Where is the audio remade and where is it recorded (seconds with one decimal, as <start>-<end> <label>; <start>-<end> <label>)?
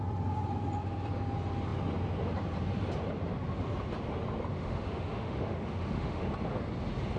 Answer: 0.0-4.5 recorded; 4.5-6.2 remade; 6.2-7.2 recorded